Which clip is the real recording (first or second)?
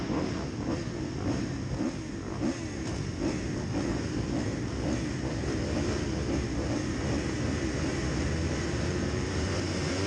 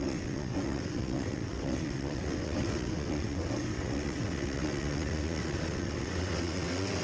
first